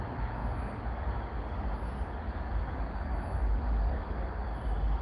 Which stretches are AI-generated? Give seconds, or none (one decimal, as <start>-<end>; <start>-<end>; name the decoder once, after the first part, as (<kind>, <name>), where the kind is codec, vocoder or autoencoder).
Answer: 0.0-4.5 (codec, DAC)